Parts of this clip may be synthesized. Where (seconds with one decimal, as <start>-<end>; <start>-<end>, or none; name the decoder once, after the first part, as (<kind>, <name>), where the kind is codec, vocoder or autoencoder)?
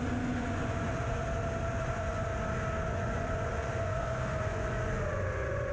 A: 0.0-1.2 (vocoder, Vocos); 1.8-2.3; 2.9-5.7